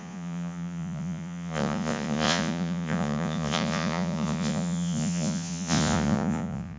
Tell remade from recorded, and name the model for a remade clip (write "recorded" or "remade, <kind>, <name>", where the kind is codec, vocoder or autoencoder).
remade, vocoder, Vocos